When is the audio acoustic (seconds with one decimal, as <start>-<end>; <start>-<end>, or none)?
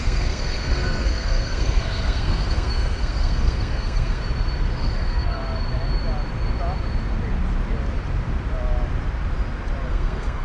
4.2-4.8; 5.4-9.9